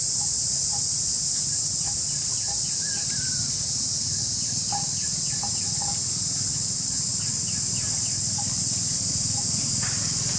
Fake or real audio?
real